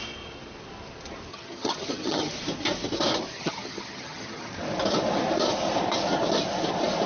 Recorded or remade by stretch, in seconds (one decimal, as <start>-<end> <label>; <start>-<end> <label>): 0.0-1.3 recorded; 1.3-2.3 remade; 2.3-3.3 recorded; 3.3-4.5 remade; 4.5-7.1 recorded